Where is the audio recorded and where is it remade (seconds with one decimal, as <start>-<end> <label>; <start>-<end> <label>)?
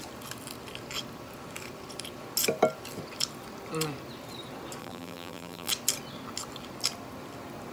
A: 0.0-4.8 recorded; 4.8-5.7 remade; 5.7-7.7 recorded